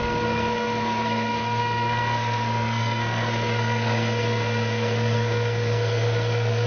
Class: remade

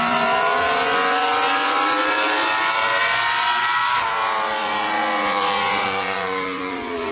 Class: remade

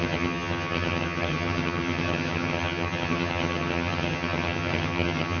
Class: remade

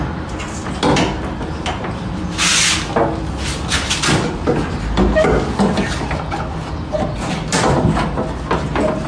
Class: recorded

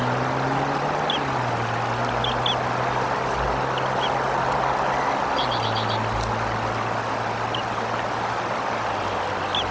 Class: recorded